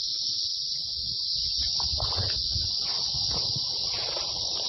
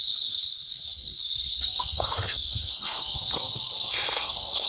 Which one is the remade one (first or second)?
second